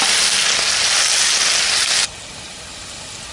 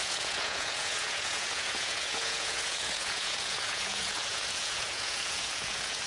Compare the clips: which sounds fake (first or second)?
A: second